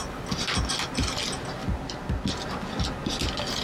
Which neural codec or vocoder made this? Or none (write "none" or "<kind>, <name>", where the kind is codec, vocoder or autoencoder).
none